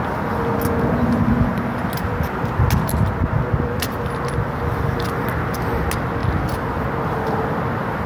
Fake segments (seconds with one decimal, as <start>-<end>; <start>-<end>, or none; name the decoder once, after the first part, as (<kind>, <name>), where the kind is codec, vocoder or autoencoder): none